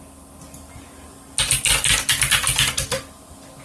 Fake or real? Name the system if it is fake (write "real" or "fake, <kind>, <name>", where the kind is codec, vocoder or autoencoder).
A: real